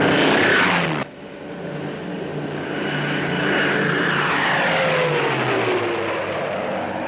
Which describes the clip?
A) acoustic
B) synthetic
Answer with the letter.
A